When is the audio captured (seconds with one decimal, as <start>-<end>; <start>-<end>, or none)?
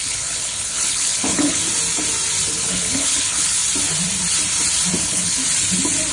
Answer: 1.6-2.5; 3.6-5.0; 5.4-6.1